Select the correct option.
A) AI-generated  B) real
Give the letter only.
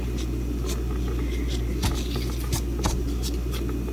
B